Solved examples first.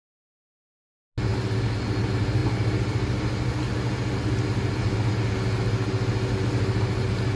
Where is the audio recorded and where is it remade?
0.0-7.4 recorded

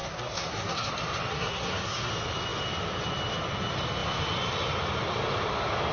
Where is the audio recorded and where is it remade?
0.0-0.9 remade; 0.9-1.3 recorded; 1.3-2.1 remade; 2.1-5.9 recorded

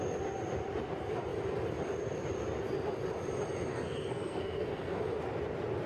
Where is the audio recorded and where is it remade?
0.0-3.7 recorded; 3.7-5.0 remade; 5.0-5.9 recorded

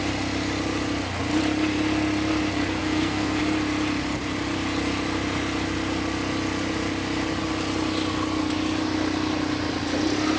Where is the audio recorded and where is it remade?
0.0-2.8 recorded; 2.8-3.4 remade; 3.4-10.4 recorded

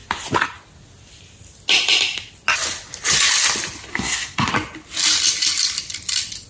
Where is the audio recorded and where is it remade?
0.0-3.9 recorded; 3.9-4.5 remade; 4.5-6.5 recorded

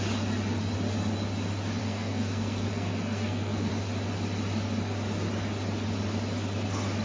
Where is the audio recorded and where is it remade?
0.0-1.8 recorded; 1.8-3.7 remade; 3.7-7.0 recorded

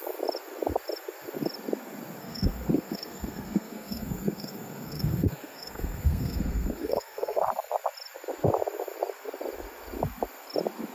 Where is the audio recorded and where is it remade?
0.0-2.2 recorded; 2.2-7.4 remade; 7.4-10.9 recorded

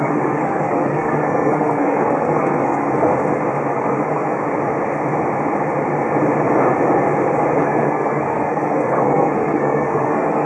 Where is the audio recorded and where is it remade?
0.0-3.1 remade; 3.1-3.7 recorded; 3.7-4.4 remade; 4.4-7.6 recorded; 7.6-10.5 remade